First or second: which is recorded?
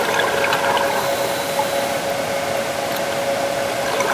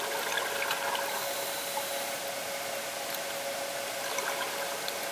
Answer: first